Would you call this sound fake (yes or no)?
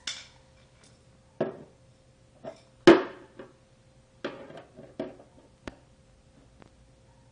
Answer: no